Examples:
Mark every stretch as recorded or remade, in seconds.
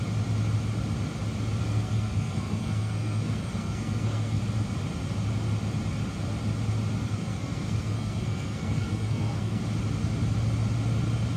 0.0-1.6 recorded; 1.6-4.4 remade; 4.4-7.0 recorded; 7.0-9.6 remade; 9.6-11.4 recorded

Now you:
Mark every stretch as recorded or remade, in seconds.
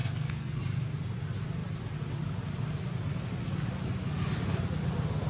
0.0-0.6 remade; 0.6-5.3 recorded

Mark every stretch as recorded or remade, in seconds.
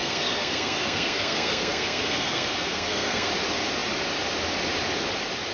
0.0-3.3 remade; 3.3-5.5 recorded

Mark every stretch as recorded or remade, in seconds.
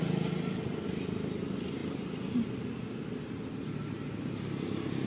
0.0-5.1 recorded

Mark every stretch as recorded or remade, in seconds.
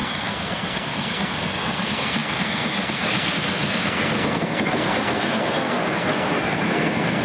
0.0-7.2 remade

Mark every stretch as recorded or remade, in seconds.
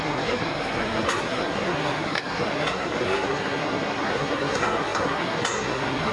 0.0-6.1 remade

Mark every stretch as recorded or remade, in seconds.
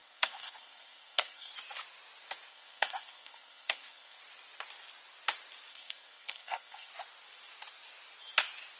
0.0-1.5 remade; 1.5-2.5 recorded; 2.5-4.2 remade; 4.2-5.7 recorded; 5.7-6.9 remade; 6.9-8.8 recorded